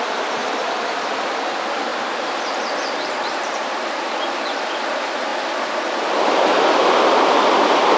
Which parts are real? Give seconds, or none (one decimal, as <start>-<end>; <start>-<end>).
0.0-1.9; 4.3-8.0